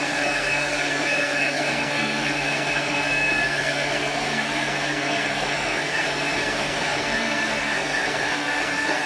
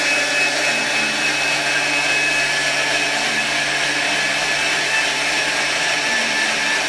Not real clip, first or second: first